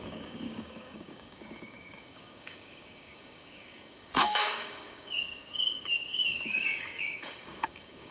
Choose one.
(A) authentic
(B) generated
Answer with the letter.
B